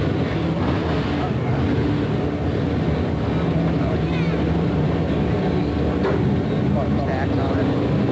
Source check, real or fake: real